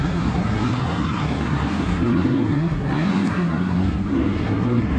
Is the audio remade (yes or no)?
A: yes